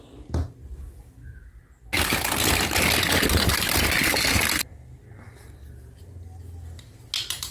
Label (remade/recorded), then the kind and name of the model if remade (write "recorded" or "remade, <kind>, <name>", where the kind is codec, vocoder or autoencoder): recorded